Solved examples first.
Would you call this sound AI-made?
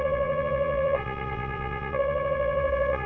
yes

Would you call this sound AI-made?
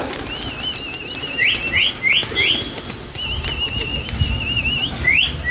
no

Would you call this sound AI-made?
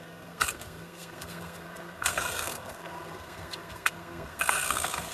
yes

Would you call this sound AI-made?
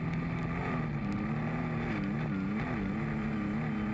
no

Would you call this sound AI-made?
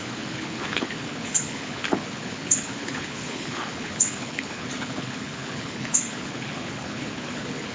yes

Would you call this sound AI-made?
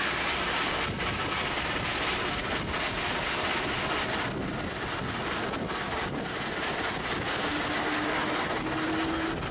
no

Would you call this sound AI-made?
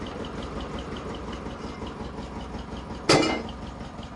no